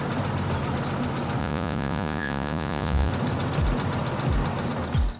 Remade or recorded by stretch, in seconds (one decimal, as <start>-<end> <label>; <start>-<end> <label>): 0.0-1.4 recorded; 1.4-3.1 remade; 3.1-5.2 recorded